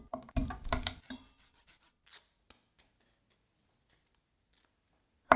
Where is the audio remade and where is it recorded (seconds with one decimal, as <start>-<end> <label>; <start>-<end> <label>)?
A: 0.0-5.4 recorded